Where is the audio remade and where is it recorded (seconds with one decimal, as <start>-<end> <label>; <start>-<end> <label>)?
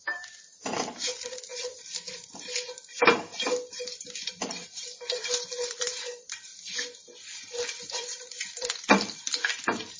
0.0-3.3 remade; 3.3-4.3 recorded; 4.3-6.5 remade; 6.5-7.8 recorded; 7.8-10.0 remade